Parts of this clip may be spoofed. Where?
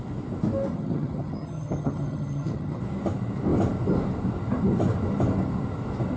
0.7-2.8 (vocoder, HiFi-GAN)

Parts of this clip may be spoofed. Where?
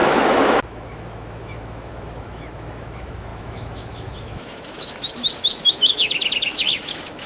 0.0-7.3 (autoencoder, DAC-VAE)